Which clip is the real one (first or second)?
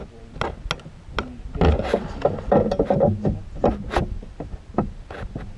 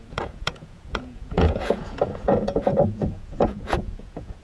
first